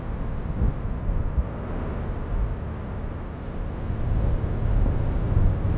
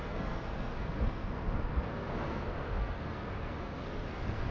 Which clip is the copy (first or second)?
second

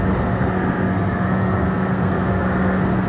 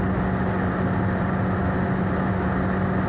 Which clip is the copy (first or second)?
first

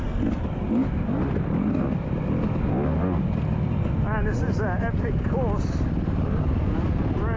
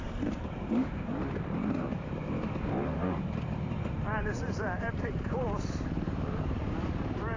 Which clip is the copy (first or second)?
second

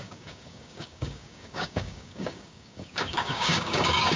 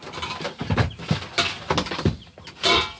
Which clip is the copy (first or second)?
first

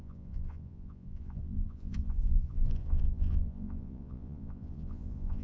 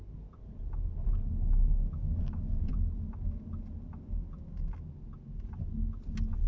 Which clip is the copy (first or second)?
first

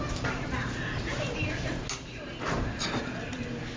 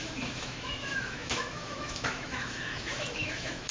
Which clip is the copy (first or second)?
second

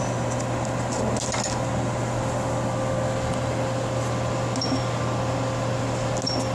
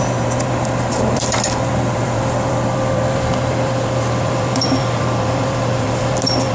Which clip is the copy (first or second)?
second